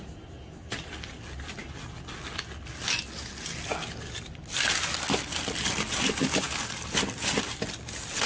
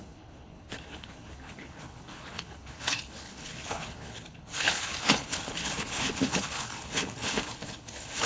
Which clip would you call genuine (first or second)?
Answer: first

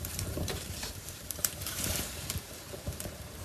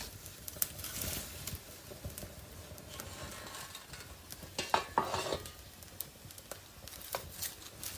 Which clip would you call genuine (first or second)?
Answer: second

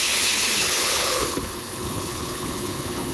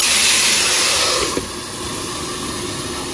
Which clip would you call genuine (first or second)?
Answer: second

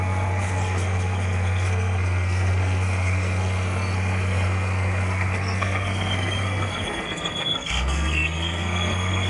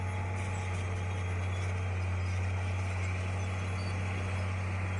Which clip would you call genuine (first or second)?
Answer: second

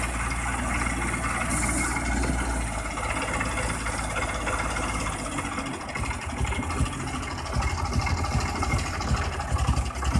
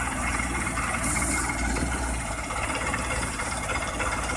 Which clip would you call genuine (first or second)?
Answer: first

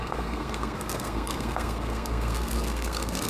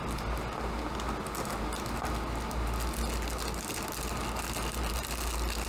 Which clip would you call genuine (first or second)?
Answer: second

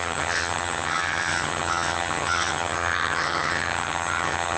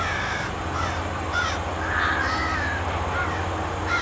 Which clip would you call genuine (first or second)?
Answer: second